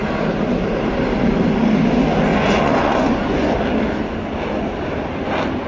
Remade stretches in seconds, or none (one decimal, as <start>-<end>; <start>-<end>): 2.3-3.6